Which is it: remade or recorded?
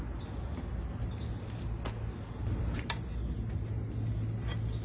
recorded